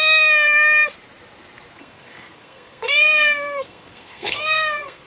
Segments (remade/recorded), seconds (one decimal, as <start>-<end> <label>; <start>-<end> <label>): 0.0-1.8 recorded; 1.8-5.1 remade